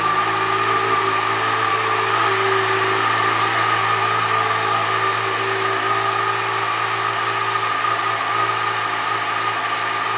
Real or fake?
real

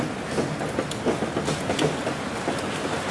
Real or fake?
real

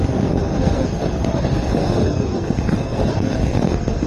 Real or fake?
fake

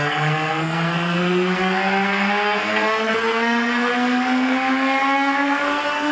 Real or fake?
fake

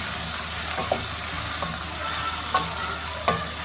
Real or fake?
real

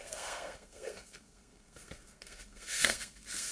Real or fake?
fake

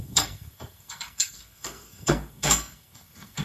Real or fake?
fake